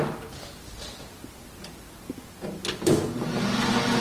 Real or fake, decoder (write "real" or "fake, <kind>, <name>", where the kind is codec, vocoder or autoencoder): real